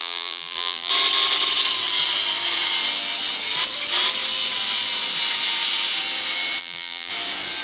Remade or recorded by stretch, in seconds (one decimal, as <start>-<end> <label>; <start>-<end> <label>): 0.0-0.9 remade; 0.9-6.6 recorded; 6.6-7.1 remade; 7.1-7.6 recorded

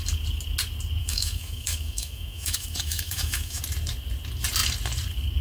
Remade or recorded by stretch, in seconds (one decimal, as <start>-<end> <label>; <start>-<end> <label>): 0.0-1.0 recorded; 1.0-3.6 remade; 3.6-5.4 recorded